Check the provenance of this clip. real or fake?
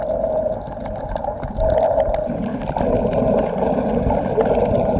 fake